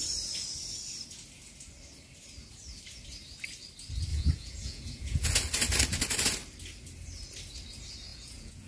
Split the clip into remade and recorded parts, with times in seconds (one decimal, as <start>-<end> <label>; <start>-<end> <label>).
0.0-4.1 recorded; 4.1-5.3 remade; 5.3-8.1 recorded; 8.1-8.7 remade

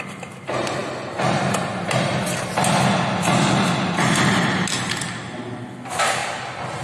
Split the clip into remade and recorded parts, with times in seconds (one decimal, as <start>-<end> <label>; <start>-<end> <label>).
0.0-6.8 recorded

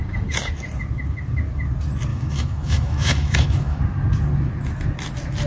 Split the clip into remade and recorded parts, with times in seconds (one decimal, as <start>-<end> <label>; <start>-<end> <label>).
0.0-2.1 recorded; 2.1-3.8 remade; 3.8-5.5 recorded

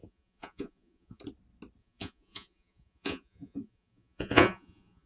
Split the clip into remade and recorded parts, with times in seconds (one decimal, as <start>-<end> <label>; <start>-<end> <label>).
0.0-1.2 remade; 1.2-1.8 recorded; 1.8-5.1 remade

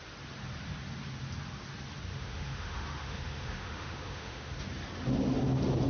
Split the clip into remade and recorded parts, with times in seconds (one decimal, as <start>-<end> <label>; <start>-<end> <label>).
0.0-2.1 recorded; 2.1-4.6 remade; 4.6-5.9 recorded